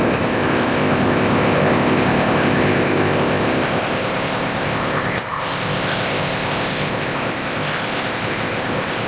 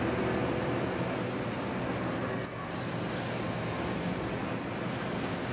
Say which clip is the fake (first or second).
first